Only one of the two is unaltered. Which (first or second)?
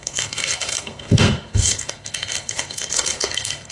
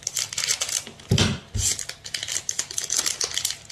second